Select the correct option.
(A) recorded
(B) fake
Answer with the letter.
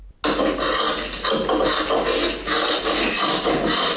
A